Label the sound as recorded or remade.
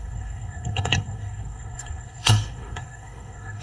remade